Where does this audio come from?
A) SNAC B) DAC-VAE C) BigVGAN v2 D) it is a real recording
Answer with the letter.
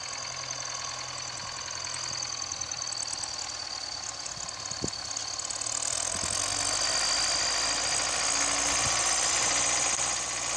D